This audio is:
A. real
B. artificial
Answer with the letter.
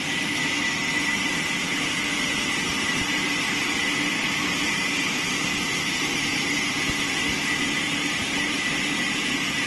A